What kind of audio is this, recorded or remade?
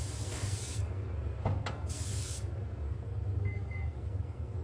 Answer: remade